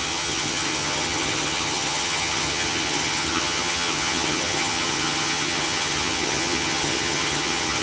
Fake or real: fake